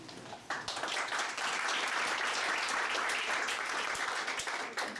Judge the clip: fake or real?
fake